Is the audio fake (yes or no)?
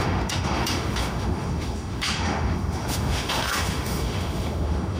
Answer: yes